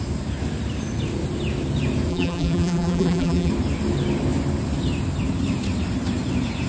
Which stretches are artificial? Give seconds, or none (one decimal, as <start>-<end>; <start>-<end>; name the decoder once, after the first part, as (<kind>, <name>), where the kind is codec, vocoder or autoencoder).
2.1-3.5 (vocoder, BigVGAN v2)